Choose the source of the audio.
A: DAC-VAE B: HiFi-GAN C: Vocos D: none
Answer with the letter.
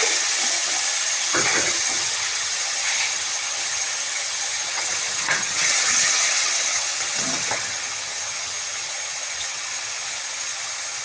B